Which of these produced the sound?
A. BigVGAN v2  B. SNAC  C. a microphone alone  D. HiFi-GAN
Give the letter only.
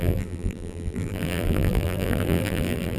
A